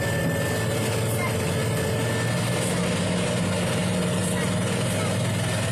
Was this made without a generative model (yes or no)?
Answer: yes